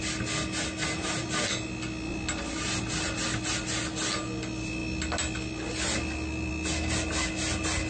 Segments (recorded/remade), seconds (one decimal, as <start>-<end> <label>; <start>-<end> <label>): 0.0-7.9 recorded